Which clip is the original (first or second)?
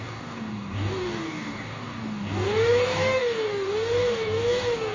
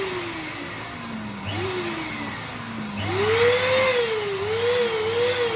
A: second